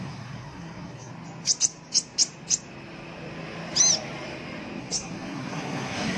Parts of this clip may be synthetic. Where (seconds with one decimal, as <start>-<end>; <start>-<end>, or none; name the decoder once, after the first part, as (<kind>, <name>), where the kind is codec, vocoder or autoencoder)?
0.0-1.1 (codec, SNAC); 4.8-6.2